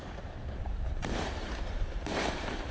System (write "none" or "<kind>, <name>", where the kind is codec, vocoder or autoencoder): vocoder, BigVGAN v2